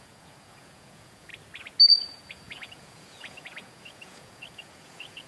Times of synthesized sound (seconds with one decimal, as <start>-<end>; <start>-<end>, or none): 0.0-1.3; 1.9-5.3